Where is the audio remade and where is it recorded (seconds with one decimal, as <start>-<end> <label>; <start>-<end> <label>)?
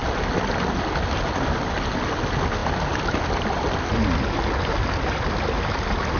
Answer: 0.0-6.2 recorded